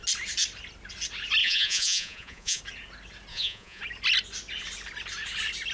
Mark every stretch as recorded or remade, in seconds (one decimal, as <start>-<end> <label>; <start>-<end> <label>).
0.0-1.4 recorded; 1.4-2.6 remade; 2.6-3.3 recorded; 3.3-3.8 remade; 3.8-5.7 recorded